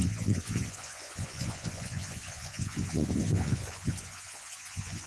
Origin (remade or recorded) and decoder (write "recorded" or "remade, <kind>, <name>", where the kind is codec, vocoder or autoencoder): remade, vocoder, Vocos